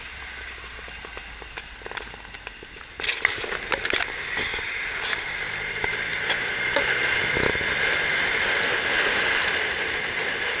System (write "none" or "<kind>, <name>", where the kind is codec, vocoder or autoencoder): none